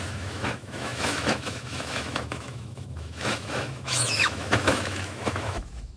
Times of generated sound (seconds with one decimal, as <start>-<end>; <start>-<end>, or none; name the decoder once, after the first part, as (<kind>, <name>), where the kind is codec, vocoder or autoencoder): 0.0-6.0 (autoencoder, DAC-VAE)